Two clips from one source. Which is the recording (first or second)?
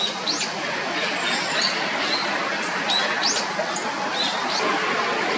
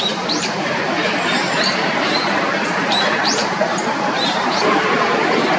first